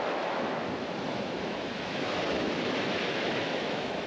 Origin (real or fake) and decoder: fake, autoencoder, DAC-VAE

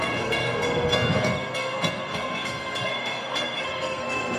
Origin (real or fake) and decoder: fake, codec, SNAC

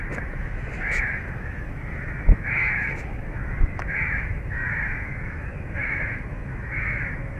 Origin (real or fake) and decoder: fake, autoencoder, DAC-VAE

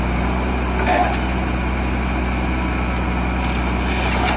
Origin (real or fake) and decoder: real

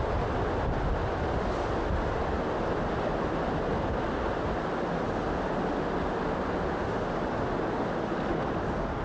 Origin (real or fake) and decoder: real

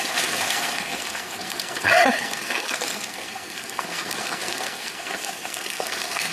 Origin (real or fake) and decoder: fake, codec, SNAC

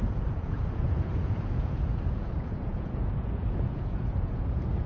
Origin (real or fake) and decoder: fake, vocoder, Vocos